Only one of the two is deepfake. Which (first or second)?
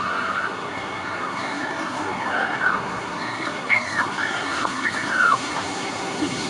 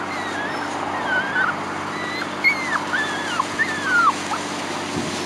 first